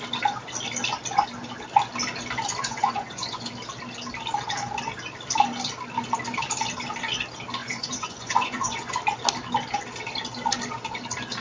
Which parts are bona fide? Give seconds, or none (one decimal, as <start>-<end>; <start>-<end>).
0.0-2.6; 3.5-7.6; 8.9-11.4